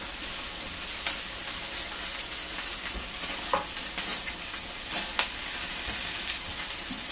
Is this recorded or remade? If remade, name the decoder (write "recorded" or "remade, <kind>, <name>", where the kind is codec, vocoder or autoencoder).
recorded